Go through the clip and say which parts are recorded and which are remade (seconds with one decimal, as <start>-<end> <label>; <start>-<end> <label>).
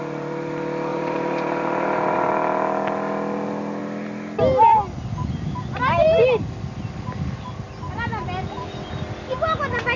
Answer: 0.0-0.9 recorded; 0.9-2.3 remade; 2.3-10.0 recorded